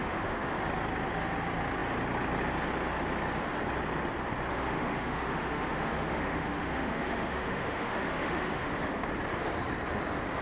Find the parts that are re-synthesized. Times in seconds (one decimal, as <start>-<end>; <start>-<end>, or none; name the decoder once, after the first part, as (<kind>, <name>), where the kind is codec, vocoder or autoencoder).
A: 0.0-0.5 (autoencoder, DAC-VAE); 4.5-9.0